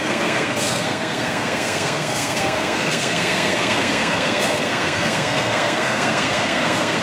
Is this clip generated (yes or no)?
yes